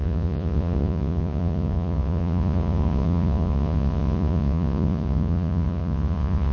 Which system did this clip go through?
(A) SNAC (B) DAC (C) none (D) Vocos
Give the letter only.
D